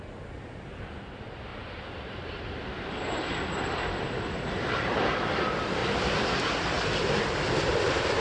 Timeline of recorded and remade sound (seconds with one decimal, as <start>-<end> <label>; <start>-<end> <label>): 0.0-1.5 remade; 1.5-4.7 recorded; 4.7-5.8 remade; 5.8-7.3 recorded; 7.3-8.2 remade